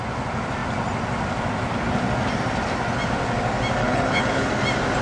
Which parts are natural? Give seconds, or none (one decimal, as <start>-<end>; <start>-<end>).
0.0-3.8; 4.5-5.0